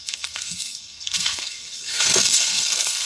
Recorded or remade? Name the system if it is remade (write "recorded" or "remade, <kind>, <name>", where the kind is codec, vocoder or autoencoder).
remade, codec, SNAC